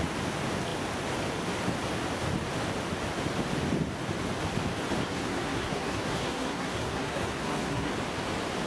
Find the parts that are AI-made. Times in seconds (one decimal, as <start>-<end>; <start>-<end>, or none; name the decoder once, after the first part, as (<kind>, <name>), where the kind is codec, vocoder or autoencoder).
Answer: 5.0-7.9 (codec, SNAC)